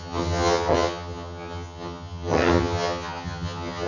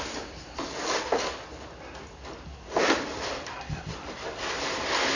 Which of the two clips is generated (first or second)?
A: first